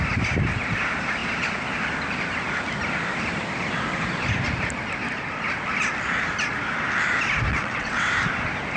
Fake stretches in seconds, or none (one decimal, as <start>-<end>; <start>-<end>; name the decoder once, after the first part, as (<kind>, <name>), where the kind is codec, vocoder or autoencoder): 7.5-8.1 (vocoder, WaveNeXt)